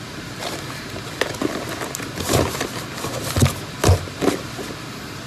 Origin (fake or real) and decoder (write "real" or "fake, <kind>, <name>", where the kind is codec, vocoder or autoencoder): real